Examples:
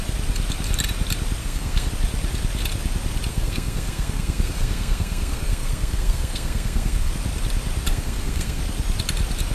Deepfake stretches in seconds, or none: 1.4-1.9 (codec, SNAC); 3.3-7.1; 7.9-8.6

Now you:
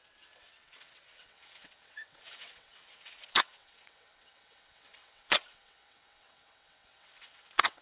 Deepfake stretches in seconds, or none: 0.0-7.8 (vocoder, WaveNeXt)

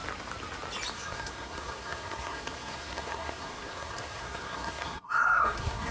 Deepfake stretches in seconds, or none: 0.9-5.9 (codec, SNAC)

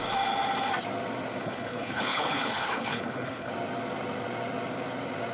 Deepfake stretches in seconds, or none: 1.4-3.5 (codec, HILCodec)

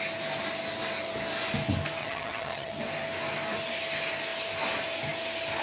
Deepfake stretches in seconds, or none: 2.0-2.8 (vocoder, HiFi-GAN)